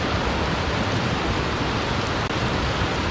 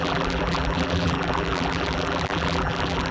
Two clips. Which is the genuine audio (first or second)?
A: first